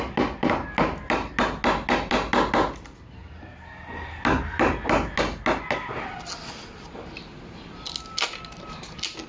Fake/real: real